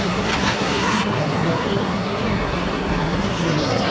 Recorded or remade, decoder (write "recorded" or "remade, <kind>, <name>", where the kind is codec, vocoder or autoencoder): remade, codec, SNAC